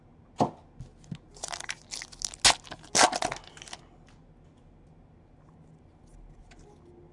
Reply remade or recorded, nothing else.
recorded